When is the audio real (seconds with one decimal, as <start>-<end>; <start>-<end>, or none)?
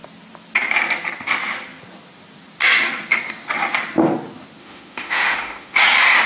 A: 0.0-4.6; 5.8-6.3